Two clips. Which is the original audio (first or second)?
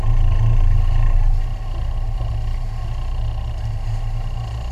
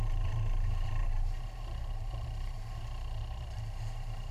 first